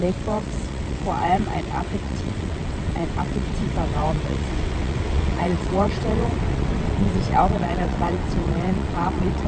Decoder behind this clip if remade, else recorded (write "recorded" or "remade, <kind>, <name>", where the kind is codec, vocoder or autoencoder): remade, vocoder, WaveNeXt